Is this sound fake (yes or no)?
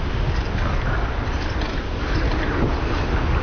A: no